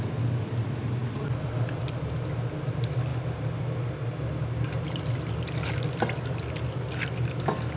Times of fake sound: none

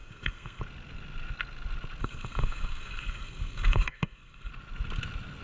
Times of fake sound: 0.0-0.6 (codec, SNAC); 2.0-4.5

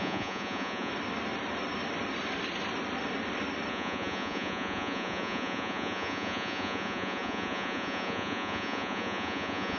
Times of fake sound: 0.0-0.9 (vocoder, Vocos); 3.7-9.8

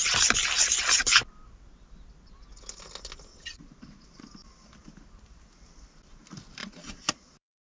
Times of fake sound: 3.3-4.2 (vocoder, Vocos); 6.6-7.6

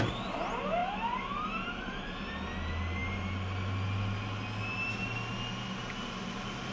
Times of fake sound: none